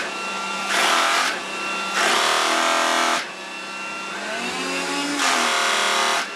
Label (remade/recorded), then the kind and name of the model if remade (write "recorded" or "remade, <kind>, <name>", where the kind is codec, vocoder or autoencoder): recorded